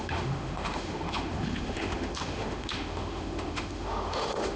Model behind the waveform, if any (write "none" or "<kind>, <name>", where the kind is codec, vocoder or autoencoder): autoencoder, DAC-VAE